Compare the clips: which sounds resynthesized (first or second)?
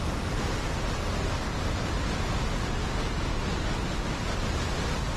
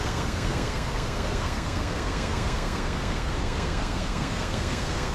second